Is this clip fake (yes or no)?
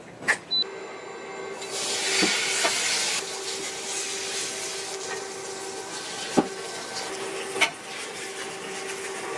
no